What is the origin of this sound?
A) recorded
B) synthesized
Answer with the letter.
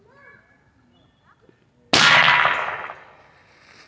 A